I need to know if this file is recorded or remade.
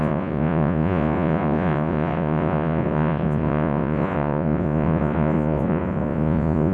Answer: remade